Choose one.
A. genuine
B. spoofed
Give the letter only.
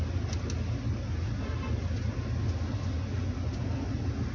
A